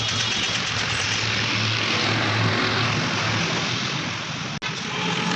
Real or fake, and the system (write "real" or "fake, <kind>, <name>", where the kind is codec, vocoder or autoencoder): real